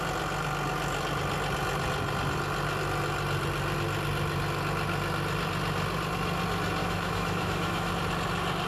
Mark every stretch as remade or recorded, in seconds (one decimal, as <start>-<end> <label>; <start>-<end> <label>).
0.0-6.8 recorded; 6.8-7.9 remade; 7.9-8.7 recorded